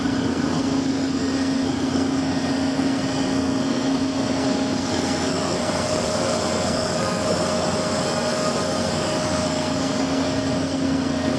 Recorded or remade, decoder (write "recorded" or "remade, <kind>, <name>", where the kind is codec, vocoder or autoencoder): remade, codec, SNAC